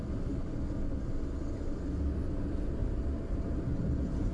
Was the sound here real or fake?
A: real